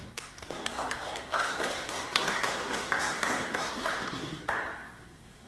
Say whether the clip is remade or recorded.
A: remade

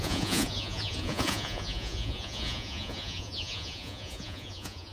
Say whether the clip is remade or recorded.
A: remade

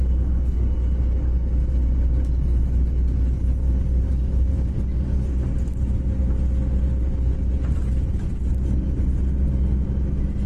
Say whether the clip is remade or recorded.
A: recorded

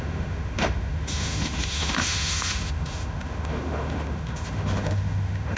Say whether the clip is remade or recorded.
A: remade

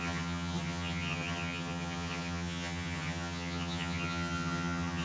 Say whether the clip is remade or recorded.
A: remade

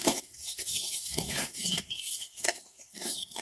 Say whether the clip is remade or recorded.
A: remade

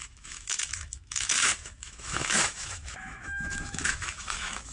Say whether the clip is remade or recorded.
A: remade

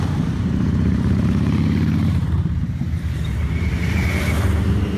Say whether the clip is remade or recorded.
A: remade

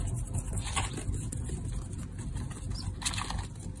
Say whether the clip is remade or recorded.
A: recorded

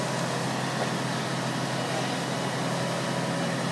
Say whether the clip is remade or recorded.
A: recorded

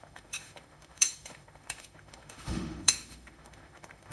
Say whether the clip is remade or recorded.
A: remade